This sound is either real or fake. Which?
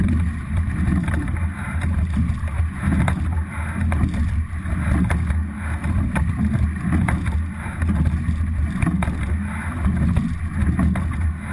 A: real